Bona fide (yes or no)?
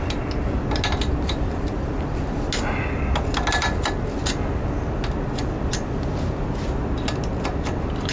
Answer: yes